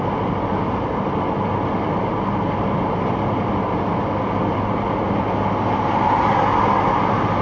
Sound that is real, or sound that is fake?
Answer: real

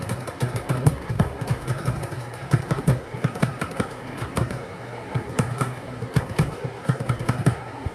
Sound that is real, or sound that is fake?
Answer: fake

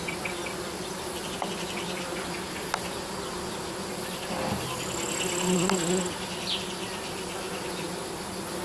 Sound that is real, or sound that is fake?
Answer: real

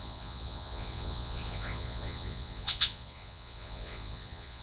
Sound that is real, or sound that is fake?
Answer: fake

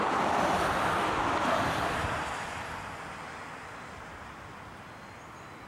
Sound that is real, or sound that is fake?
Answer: real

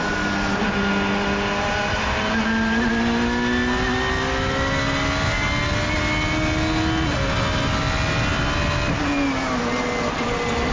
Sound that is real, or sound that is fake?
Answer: real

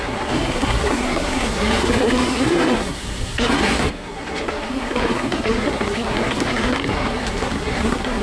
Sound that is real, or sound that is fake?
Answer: fake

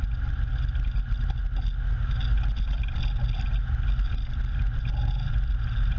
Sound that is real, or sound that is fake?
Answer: real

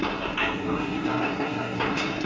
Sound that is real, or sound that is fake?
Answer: fake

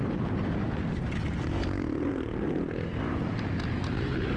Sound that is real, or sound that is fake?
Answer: fake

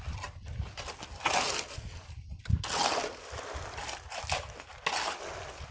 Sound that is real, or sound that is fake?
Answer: real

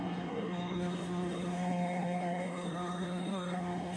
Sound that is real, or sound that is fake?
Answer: fake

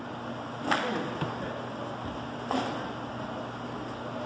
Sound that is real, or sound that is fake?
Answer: real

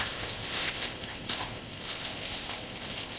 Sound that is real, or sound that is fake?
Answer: fake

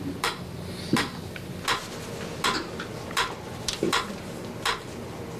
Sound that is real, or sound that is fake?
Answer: real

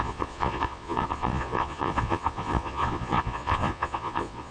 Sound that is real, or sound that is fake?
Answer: fake